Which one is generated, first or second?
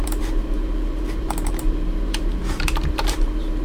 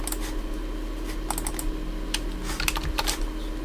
first